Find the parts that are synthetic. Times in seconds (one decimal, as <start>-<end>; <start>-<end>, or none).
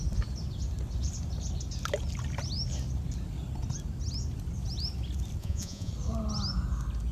5.4-5.9